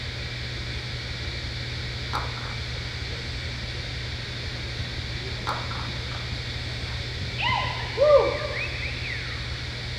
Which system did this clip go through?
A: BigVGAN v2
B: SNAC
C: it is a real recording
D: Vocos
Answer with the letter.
C